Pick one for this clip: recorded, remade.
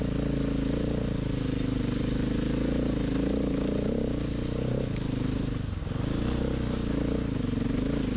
recorded